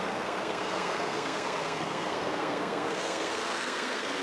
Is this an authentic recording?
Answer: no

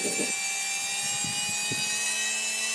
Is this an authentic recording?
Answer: yes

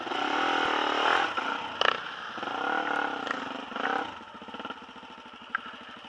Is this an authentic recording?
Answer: yes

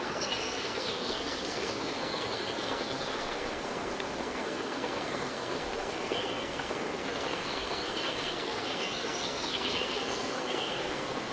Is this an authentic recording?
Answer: no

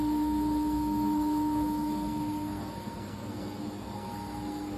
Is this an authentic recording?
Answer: no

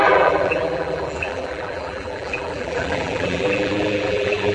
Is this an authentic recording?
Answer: no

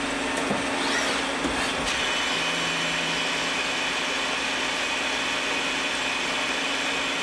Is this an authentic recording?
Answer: yes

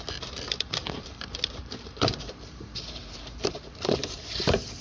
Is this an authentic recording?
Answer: no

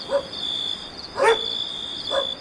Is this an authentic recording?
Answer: yes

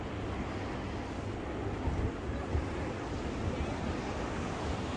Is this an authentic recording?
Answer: yes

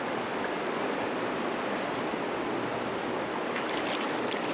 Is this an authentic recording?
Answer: yes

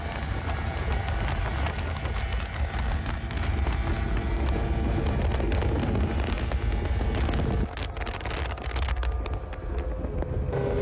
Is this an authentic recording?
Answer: yes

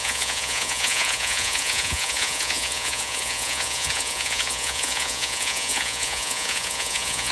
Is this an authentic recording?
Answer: no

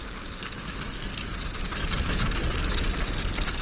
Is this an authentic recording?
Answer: yes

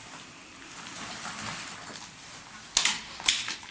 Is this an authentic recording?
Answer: yes